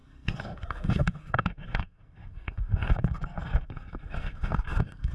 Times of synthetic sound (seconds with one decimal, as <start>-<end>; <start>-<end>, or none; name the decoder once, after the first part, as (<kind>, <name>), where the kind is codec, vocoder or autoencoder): 0.0-5.1 (codec, SNAC)